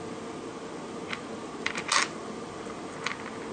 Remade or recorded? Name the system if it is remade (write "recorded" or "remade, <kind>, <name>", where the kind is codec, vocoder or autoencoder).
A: recorded